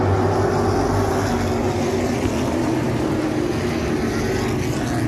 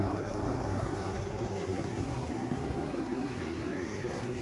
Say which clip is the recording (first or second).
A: first